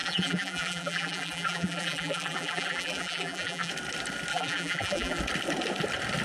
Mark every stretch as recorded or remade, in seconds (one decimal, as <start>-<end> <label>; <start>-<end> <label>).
0.0-3.7 remade; 3.7-4.3 recorded; 4.3-5.2 remade; 5.2-6.2 recorded